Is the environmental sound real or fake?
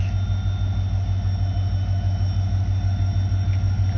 real